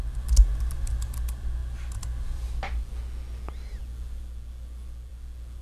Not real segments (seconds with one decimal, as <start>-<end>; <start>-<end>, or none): none